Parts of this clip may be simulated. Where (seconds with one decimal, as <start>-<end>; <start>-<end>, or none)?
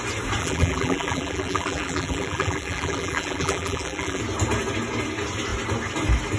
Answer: 0.4-4.2